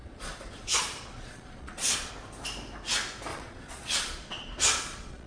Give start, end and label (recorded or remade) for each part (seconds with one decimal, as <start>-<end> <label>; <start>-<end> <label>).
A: 0.0-2.1 remade; 2.1-3.3 recorded; 3.3-5.3 remade

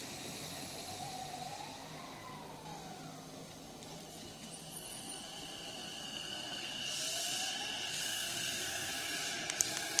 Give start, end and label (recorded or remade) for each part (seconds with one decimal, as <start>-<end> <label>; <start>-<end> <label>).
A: 0.0-6.0 recorded; 6.0-6.8 remade; 6.8-7.9 recorded; 7.9-8.9 remade; 8.9-10.0 recorded